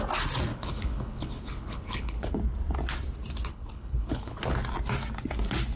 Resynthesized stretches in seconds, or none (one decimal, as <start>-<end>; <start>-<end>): 0.5-2.3; 3.5-4.4